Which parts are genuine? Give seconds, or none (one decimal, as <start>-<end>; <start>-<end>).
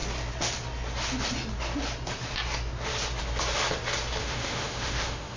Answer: 0.0-4.2